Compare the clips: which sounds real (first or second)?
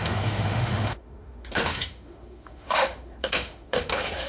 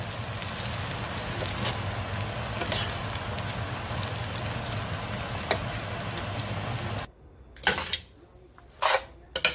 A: second